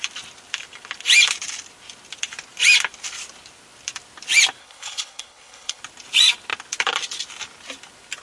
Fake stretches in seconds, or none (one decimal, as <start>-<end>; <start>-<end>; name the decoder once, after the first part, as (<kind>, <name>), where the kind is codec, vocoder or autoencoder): 4.6-5.8 (codec, HILCodec)